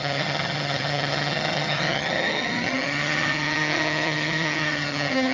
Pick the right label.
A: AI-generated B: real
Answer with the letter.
A